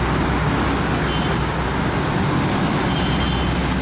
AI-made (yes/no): no